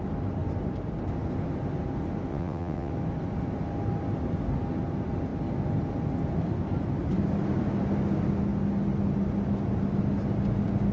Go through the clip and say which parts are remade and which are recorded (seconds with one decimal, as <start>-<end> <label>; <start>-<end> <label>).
0.0-2.3 recorded; 2.3-2.9 remade; 2.9-10.9 recorded